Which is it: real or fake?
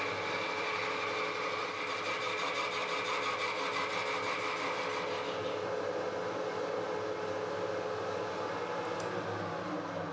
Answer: real